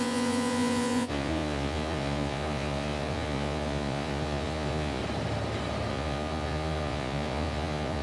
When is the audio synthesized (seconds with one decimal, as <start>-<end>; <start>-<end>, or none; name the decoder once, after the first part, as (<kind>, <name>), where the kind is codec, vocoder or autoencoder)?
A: 0.0-5.0 (vocoder, Vocos); 5.9-8.0